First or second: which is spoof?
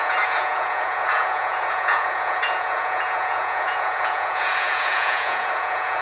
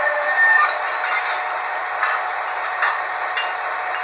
first